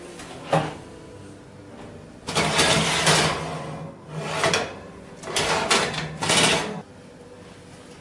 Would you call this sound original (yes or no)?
yes